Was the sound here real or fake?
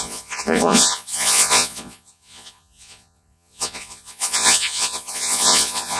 fake